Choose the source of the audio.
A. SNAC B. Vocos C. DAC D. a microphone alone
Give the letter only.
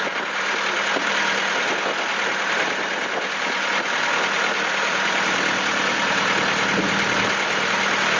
D